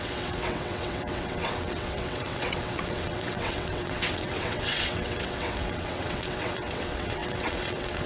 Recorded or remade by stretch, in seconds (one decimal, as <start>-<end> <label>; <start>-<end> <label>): 0.0-8.1 remade